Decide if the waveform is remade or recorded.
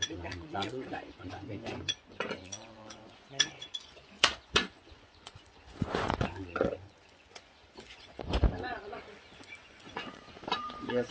remade